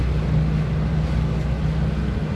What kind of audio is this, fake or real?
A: real